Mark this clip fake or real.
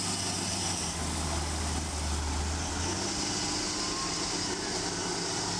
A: real